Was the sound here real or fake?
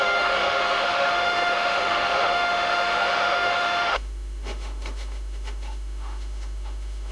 fake